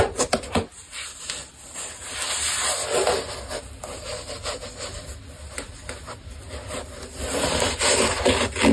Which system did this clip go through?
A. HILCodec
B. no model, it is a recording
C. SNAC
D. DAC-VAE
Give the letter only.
B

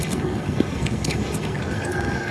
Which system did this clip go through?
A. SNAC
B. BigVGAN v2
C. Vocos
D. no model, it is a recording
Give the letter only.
A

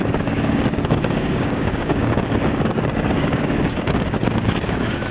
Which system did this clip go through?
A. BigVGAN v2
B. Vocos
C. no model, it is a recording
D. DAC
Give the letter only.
D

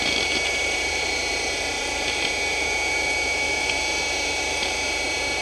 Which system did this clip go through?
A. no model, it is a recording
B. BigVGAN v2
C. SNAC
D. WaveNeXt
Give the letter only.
B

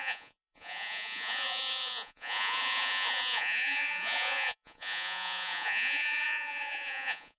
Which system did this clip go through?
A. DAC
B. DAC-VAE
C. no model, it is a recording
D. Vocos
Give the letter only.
D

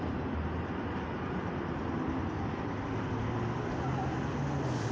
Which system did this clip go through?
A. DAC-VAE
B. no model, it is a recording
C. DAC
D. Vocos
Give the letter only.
B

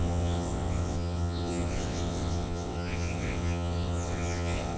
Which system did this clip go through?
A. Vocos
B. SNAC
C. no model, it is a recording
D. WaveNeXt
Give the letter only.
D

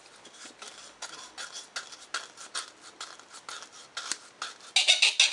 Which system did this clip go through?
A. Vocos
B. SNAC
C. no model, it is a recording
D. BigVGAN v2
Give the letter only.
C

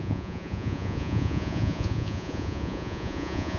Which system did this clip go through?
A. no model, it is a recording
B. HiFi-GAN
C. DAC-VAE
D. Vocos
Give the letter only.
D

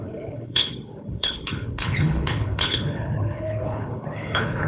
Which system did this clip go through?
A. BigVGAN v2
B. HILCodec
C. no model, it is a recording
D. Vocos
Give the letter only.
B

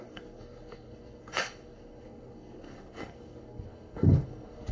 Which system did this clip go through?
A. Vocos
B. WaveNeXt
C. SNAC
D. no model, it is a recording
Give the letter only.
C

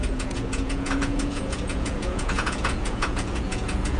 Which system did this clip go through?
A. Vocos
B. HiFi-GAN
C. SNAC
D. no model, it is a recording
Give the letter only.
A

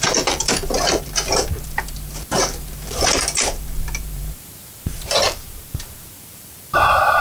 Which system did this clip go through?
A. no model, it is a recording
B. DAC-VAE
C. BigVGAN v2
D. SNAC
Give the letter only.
C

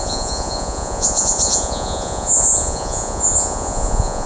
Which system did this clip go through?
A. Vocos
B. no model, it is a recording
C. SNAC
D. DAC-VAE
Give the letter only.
A